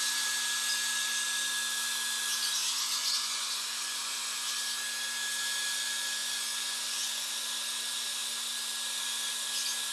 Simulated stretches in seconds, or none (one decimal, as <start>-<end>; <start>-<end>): 2.6-4.5; 6.2-7.3